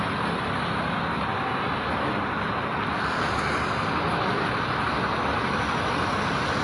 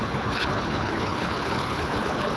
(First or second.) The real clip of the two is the first